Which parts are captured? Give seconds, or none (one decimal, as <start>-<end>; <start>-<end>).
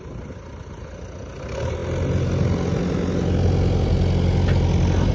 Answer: 0.0-5.1